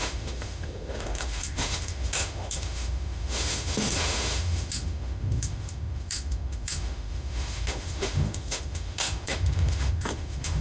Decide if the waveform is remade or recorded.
remade